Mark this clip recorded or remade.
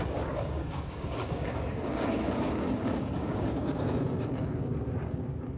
remade